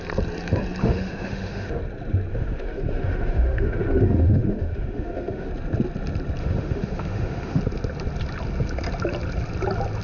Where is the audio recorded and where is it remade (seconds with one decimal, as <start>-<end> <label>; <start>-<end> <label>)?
0.0-0.8 recorded; 0.8-1.8 remade; 1.8-2.3 recorded; 2.3-5.5 remade; 5.5-6.4 recorded; 6.4-7.6 remade; 7.6-10.0 recorded